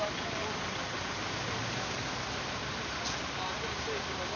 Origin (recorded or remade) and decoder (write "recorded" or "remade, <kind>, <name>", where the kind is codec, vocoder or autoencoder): recorded